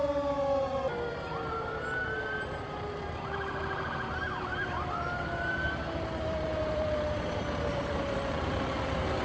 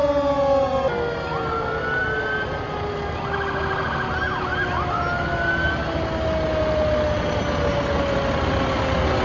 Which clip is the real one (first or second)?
second